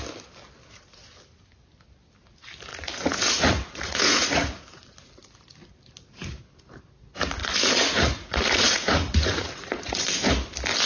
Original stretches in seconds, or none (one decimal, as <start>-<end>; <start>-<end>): 0.0-2.7; 5.1-7.4; 10.0-10.9